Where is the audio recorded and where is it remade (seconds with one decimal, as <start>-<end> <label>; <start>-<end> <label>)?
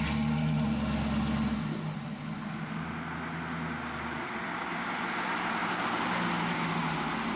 0.0-7.3 recorded